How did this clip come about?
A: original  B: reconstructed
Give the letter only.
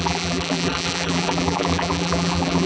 B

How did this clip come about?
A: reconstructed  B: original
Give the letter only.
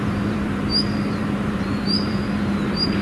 A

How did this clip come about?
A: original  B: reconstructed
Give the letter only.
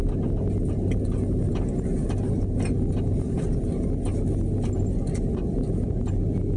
A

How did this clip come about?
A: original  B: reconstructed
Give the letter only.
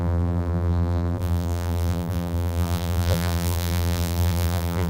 B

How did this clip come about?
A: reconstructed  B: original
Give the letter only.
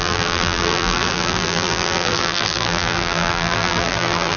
A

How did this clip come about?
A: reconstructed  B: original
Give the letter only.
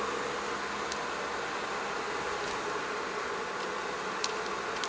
B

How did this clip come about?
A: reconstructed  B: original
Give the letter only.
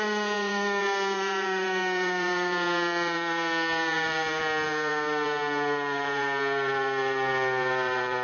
A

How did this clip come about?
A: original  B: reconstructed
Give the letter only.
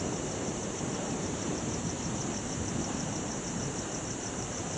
B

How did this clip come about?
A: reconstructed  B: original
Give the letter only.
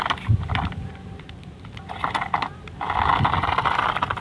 B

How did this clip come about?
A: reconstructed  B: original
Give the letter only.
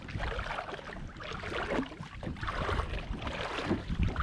A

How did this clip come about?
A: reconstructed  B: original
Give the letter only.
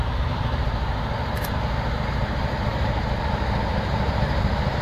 A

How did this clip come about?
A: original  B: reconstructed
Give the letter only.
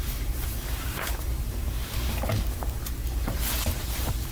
B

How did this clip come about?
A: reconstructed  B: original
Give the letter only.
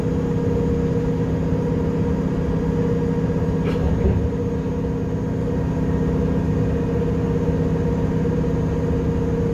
B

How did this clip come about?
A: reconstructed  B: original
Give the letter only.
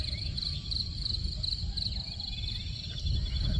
B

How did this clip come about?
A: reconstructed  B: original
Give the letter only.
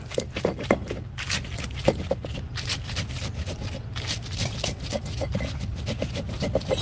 B